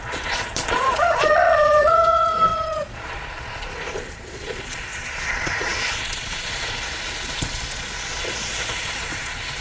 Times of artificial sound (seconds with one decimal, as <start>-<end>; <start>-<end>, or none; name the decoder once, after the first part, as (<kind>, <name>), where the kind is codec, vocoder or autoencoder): 0.0-9.6 (vocoder, Vocos)